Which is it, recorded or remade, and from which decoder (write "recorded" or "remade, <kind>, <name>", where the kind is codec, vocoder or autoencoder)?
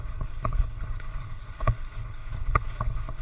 remade, codec, HILCodec